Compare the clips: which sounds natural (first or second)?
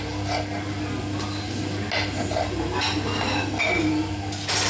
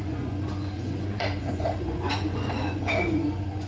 first